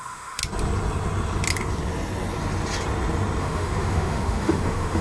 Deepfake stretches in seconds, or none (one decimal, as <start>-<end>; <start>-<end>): 0.0-0.4; 3.4-5.0